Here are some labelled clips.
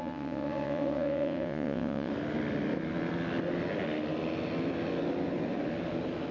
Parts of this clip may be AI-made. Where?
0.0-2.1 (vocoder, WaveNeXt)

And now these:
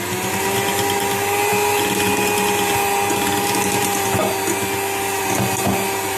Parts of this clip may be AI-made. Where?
none

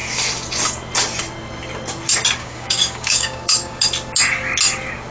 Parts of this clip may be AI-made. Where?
2.4-3.8 (codec, DAC)

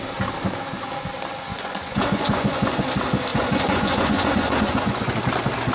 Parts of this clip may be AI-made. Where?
1.5-2.8 (vocoder, Vocos); 3.3-5.2